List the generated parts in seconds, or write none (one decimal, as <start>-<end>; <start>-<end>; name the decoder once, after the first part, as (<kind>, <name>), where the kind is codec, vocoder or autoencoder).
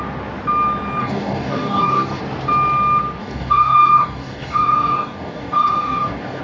1.0-2.2 (codec, DAC); 3.2-6.4